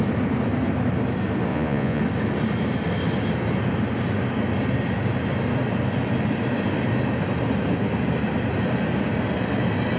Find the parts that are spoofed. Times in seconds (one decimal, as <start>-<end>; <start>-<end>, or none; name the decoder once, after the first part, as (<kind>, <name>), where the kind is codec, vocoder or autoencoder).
1.5-2.0 (vocoder, Vocos)